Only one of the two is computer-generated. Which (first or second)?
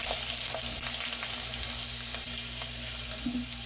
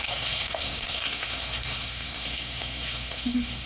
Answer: second